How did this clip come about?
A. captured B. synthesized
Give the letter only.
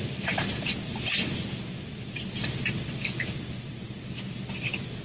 A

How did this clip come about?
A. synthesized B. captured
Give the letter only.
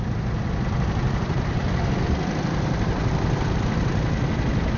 B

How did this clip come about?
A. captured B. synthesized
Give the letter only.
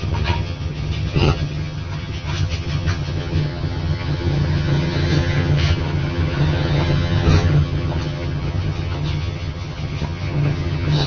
B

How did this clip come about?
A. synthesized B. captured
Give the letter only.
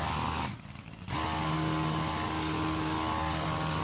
B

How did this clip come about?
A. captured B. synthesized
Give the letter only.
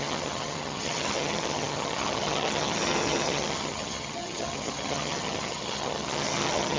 B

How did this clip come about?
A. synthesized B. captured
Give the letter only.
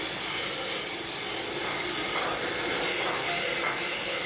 B